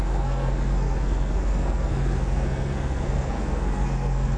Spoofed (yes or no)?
yes